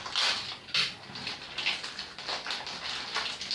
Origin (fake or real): real